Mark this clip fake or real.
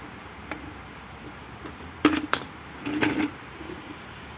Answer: real